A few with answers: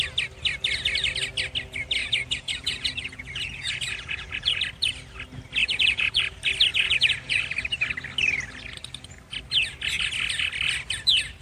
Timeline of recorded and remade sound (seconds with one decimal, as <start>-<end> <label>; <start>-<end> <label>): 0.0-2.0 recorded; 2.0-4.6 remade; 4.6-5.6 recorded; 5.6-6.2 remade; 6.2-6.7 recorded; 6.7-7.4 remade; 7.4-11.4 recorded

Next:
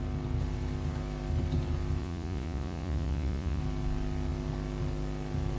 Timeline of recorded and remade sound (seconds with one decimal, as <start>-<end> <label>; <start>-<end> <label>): 0.0-2.0 recorded; 2.0-3.6 remade; 3.6-5.6 recorded

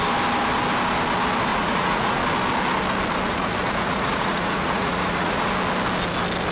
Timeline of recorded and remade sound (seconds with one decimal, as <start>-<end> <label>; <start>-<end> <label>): 0.0-1.5 recorded; 1.5-2.2 remade; 2.2-3.3 recorded; 3.3-5.5 remade; 5.5-6.5 recorded

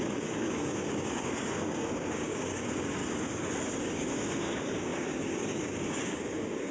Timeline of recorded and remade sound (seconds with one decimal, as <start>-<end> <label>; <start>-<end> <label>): 0.0-3.0 remade; 3.0-3.8 recorded; 3.8-6.7 remade